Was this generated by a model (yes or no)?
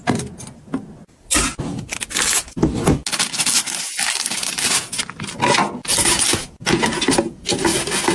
no